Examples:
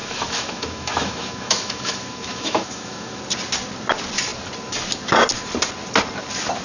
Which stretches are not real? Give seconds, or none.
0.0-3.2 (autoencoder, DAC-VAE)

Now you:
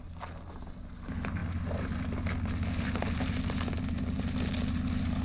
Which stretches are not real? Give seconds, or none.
none

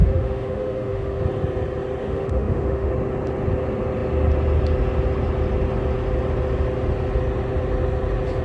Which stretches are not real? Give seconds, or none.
0.0-1.2 (autoencoder, DAC-VAE); 2.0-2.9

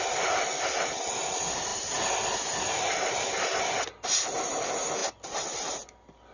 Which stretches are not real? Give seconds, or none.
none

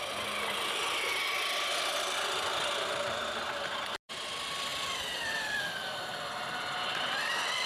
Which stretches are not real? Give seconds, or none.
none